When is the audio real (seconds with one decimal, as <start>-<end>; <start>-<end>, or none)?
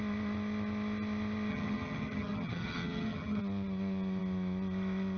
0.0-1.5; 3.4-5.2